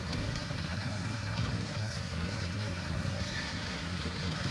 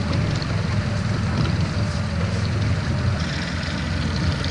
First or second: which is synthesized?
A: first